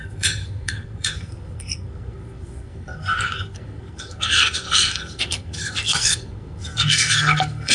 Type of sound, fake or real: fake